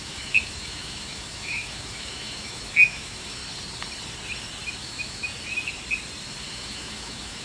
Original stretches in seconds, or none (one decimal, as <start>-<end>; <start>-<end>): 3.4-4.8; 5.2-6.5